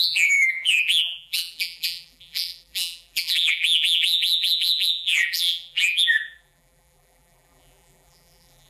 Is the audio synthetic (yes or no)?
yes